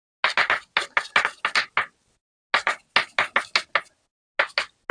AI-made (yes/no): no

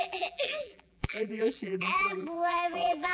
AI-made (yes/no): yes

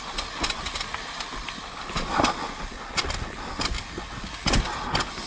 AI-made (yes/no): no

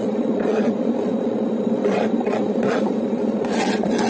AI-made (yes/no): yes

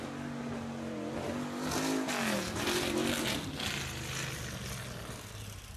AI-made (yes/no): no